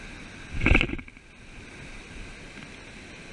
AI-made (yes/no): no